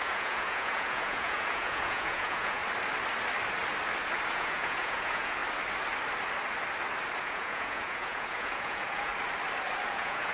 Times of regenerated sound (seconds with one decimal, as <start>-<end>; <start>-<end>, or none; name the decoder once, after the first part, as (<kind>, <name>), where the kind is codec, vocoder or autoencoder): 0.0-2.6 (vocoder, Vocos); 4.3-5.4; 7.2-9.1; 9.9-10.3